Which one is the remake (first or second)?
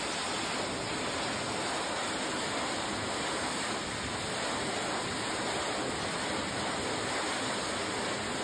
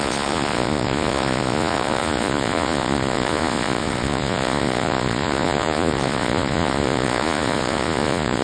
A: second